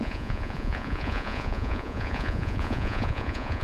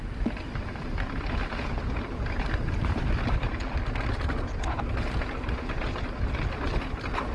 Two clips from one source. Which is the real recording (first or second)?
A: second